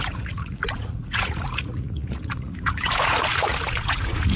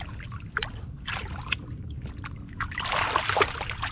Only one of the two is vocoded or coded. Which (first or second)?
first